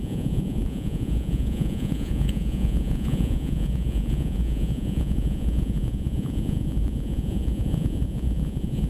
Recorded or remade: remade